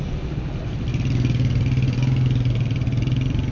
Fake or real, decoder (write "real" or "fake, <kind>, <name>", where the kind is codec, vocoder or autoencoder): real